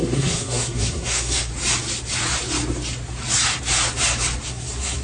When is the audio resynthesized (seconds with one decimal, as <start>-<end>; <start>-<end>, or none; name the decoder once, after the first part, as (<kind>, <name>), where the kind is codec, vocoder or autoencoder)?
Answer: 0.0-1.5 (codec, SNAC); 4.5-5.0